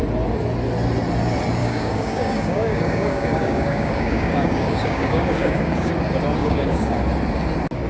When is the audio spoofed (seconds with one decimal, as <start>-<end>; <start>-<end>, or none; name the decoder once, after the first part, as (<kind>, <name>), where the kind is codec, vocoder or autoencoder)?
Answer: 1.6-5.9 (codec, DAC); 6.4-7.0